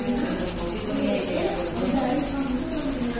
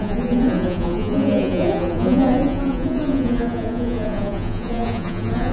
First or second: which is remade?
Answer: second